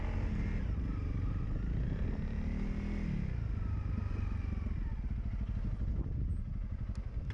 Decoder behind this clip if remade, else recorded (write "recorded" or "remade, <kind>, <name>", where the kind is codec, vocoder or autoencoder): recorded